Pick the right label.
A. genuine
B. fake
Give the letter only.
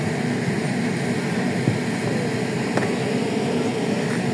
A